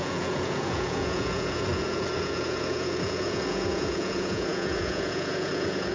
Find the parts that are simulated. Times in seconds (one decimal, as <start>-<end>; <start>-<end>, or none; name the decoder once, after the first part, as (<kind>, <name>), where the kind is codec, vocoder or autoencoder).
0.0-5.9 (vocoder, Vocos)